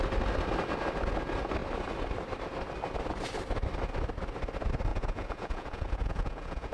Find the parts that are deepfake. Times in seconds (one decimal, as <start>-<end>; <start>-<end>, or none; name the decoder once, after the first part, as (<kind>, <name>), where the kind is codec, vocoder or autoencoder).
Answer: 4.9-6.7 (vocoder, Vocos)